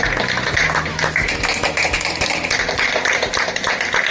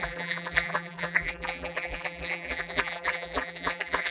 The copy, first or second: second